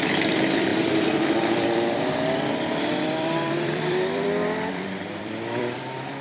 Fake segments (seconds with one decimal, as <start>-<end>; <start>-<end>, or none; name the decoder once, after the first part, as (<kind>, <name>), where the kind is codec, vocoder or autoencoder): 0.0-6.2 (vocoder, BigVGAN v2)

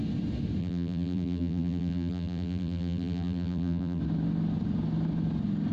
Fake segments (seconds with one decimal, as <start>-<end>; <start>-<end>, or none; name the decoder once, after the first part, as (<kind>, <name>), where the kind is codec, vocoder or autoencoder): 0.6-4.0 (vocoder, BigVGAN v2)

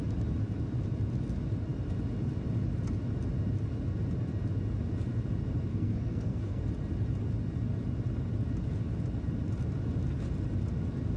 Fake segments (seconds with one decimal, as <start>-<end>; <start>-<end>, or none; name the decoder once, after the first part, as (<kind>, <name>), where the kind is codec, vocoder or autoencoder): 5.7-6.6 (codec, SNAC)